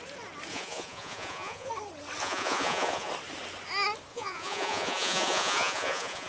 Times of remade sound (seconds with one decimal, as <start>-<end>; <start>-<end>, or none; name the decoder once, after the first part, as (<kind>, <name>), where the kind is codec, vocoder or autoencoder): 0.5-1.7 (vocoder, Vocos); 2.2-3.1; 4.1-6.3